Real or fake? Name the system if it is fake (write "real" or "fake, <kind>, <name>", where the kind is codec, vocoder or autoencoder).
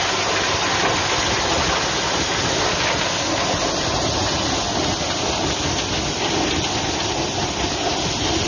real